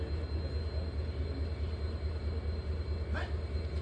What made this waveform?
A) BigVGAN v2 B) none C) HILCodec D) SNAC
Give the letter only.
B